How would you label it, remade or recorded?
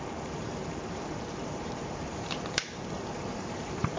remade